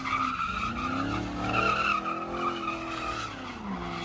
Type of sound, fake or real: real